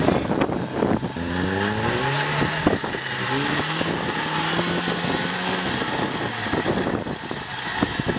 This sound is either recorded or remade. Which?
recorded